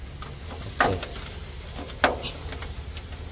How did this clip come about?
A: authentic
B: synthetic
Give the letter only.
A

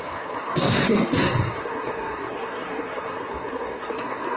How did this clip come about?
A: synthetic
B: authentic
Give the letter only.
A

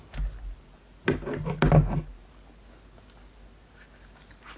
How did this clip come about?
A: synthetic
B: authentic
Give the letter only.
B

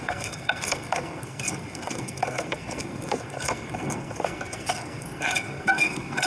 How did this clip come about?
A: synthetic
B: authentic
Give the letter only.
A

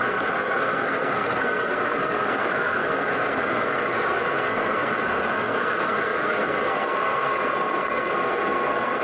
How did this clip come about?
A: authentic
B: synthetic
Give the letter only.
B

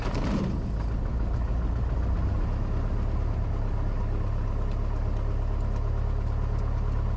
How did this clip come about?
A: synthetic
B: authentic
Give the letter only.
B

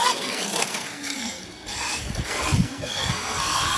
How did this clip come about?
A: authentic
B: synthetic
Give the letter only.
B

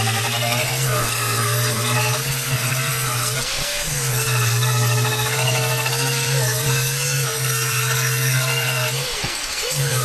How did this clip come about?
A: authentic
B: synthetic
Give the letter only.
B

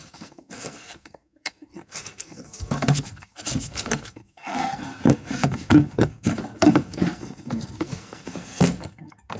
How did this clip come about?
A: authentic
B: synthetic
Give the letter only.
B